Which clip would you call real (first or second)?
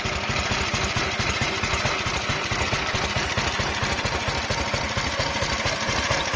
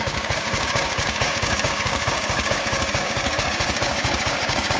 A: first